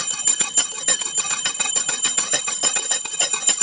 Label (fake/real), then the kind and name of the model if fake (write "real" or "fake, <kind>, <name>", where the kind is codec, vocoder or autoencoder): fake, vocoder, HiFi-GAN